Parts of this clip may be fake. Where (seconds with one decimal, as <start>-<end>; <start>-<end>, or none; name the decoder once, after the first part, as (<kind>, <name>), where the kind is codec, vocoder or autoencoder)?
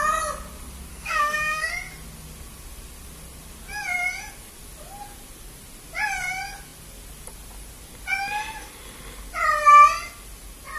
0.9-1.7 (codec, SNAC)